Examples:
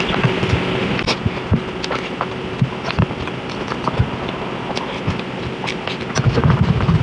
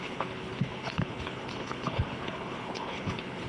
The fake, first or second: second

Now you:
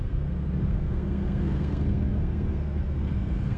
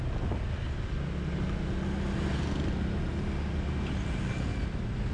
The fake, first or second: first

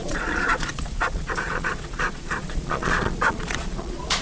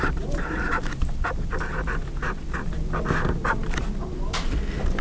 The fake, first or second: first